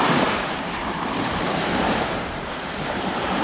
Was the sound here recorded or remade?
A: remade